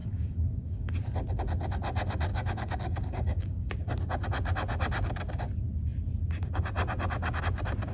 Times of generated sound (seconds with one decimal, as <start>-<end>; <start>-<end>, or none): 0.0-0.9; 2.3-3.7